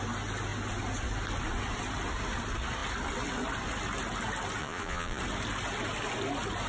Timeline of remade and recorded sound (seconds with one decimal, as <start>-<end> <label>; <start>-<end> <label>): 0.0-4.6 recorded; 4.6-5.2 remade; 5.2-6.7 recorded